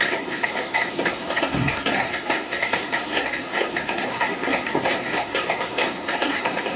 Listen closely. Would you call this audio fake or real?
fake